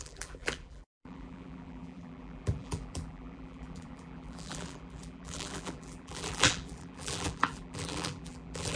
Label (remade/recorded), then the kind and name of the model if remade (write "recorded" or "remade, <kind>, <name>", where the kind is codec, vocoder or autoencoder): remade, vocoder, BigVGAN v2